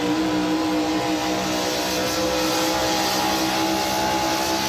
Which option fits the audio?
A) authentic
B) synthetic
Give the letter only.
A